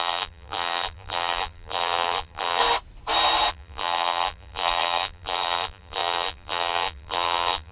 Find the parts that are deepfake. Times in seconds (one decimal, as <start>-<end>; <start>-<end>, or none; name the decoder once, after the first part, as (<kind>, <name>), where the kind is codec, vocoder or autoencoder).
0.0-2.6 (vocoder, BigVGAN v2); 3.5-7.7